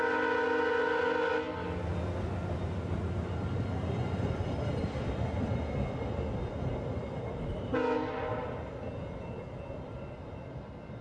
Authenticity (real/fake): real